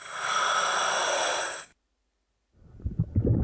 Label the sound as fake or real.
real